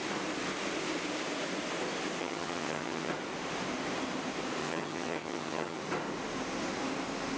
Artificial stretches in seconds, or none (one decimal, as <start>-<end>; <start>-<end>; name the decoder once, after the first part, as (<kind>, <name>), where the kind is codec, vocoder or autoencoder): 2.2-3.1 (vocoder, HiFi-GAN); 4.6-5.8